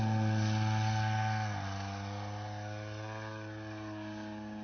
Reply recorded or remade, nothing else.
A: recorded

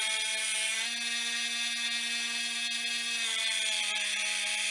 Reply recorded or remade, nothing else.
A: recorded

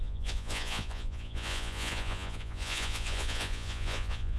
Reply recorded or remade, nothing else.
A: remade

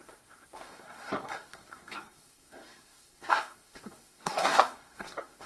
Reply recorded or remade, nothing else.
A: remade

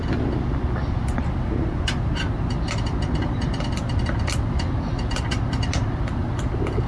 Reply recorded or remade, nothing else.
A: recorded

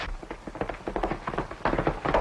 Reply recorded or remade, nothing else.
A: recorded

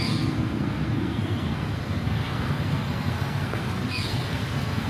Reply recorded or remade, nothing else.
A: remade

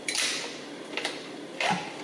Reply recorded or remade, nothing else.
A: recorded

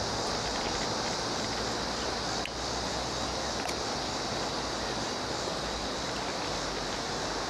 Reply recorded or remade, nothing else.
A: recorded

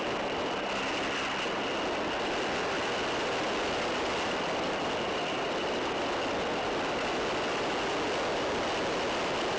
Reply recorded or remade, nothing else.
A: recorded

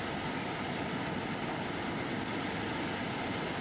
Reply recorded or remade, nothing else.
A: remade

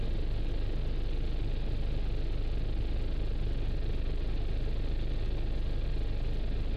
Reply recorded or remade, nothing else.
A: recorded